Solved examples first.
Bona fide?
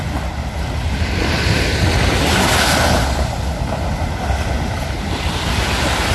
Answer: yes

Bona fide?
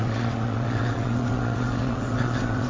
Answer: no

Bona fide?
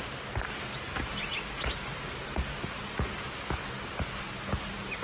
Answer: yes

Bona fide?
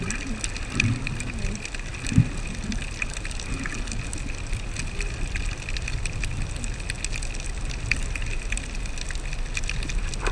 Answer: yes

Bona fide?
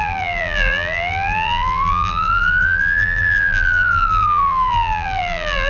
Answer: no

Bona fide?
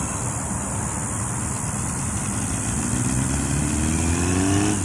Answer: yes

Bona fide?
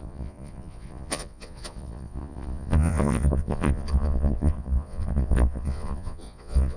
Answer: no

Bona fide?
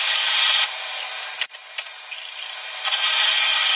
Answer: yes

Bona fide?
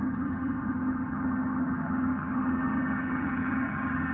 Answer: no